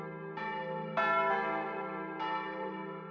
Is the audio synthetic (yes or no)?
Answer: no